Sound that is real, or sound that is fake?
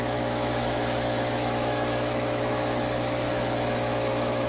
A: fake